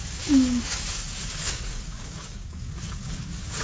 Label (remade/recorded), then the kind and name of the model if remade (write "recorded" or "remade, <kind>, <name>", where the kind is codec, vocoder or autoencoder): remade, codec, DAC